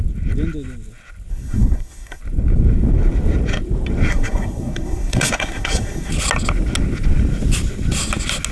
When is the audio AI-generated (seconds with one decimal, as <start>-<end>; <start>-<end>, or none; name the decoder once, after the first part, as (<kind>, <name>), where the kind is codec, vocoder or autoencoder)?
1.3-2.2 (codec, SNAC); 4.1-6.1